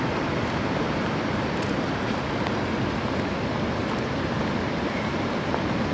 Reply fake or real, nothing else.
real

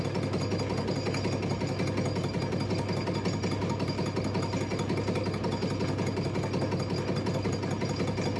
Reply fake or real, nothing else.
real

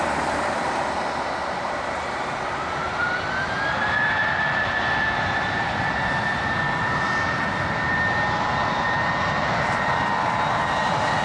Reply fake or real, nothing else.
fake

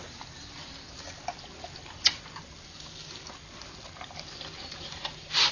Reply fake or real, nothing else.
real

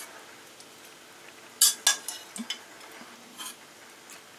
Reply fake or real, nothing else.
real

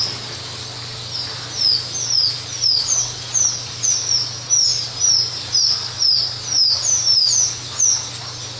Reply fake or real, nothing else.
real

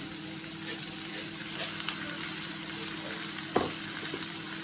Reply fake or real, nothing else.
fake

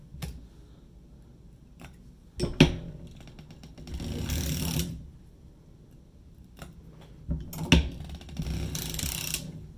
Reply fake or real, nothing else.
real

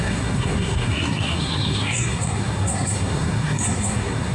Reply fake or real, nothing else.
fake